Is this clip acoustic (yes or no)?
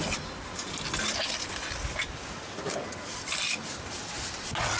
yes